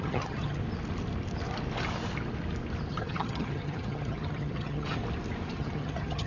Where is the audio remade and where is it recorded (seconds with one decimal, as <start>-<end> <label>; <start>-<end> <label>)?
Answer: 0.0-0.6 remade; 0.6-2.9 recorded; 2.9-5.0 remade; 5.0-5.5 recorded; 5.5-6.3 remade